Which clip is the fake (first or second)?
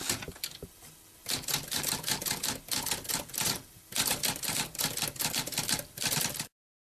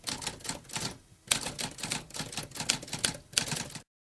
first